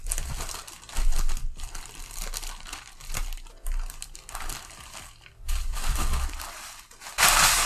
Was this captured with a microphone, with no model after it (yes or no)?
yes